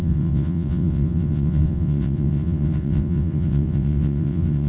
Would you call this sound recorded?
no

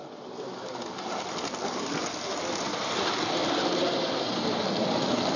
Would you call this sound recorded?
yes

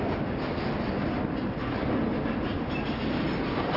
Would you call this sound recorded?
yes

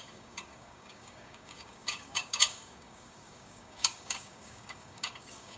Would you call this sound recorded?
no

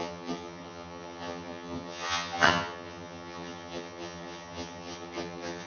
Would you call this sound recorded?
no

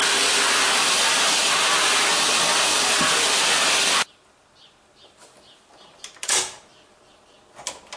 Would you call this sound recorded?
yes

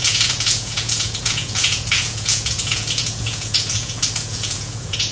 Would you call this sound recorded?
no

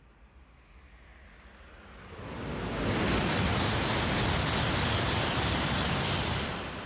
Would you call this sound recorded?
yes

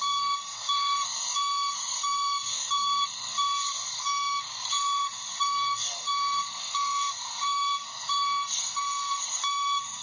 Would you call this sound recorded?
no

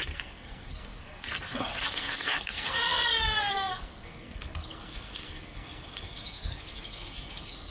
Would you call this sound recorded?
no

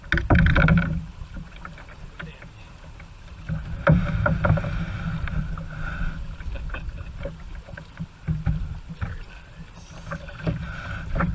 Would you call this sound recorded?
yes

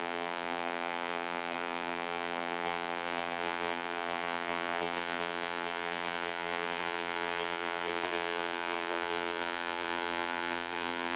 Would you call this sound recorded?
no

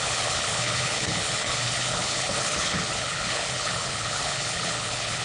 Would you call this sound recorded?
no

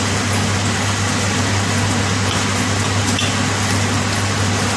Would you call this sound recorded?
yes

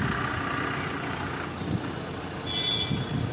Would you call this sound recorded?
yes